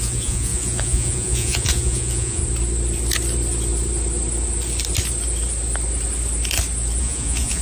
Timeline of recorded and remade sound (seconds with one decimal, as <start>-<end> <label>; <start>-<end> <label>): 0.0-2.4 remade; 2.4-7.0 recorded; 7.0-7.6 remade